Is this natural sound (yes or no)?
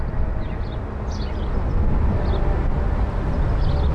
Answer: yes